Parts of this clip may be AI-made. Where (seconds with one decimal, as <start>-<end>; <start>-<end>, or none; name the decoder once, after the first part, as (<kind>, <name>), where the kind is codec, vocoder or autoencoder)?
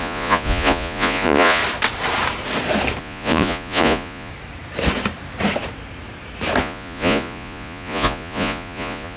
0.0-1.6 (vocoder, Vocos); 3.0-4.3; 6.6-9.2